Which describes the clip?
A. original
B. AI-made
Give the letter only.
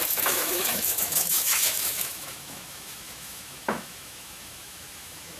B